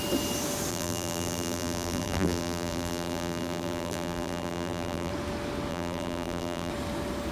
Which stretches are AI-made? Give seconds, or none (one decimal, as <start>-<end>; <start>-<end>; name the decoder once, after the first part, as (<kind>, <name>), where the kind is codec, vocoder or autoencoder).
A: 0.7-5.1 (vocoder, BigVGAN v2); 5.7-6.7